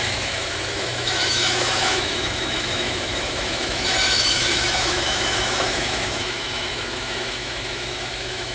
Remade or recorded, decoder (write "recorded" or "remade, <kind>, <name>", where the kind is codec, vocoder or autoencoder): remade, autoencoder, DAC-VAE